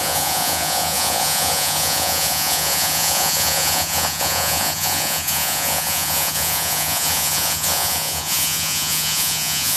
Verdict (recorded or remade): remade